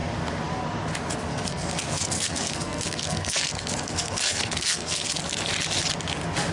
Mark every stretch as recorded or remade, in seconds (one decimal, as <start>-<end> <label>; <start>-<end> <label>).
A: 0.0-1.3 recorded; 1.3-5.2 remade; 5.2-6.5 recorded